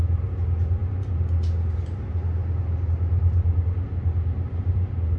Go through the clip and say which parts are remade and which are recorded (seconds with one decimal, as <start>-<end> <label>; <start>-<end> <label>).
0.0-5.2 recorded